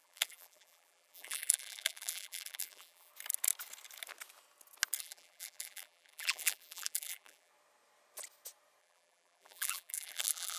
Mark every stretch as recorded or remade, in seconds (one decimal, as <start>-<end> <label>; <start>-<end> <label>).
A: 0.0-3.1 remade; 3.1-5.0 recorded; 5.0-7.5 remade; 7.5-8.8 recorded; 8.8-10.6 remade